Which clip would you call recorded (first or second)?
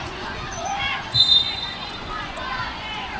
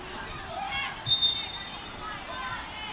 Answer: second